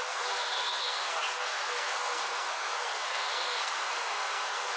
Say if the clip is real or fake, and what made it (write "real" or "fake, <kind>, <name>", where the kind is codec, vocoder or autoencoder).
fake, codec, SNAC